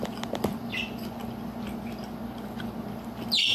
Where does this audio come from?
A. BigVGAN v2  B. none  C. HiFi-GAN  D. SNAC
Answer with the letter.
B